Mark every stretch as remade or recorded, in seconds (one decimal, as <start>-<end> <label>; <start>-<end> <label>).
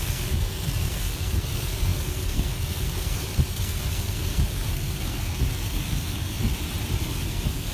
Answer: 0.0-6.5 remade; 6.5-7.0 recorded; 7.0-7.7 remade